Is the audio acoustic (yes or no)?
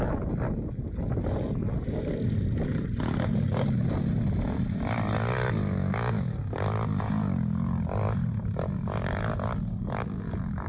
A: yes